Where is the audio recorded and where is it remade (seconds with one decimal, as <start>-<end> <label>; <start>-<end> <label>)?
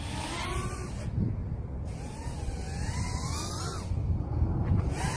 0.0-5.2 recorded